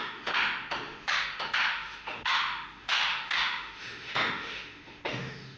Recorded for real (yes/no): no